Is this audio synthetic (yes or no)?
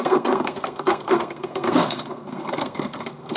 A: yes